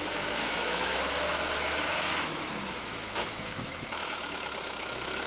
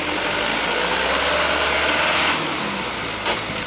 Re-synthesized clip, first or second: first